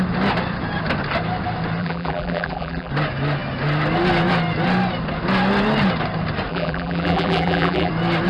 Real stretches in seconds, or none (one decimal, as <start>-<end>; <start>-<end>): 0.0-1.8; 2.9-6.5; 7.9-8.3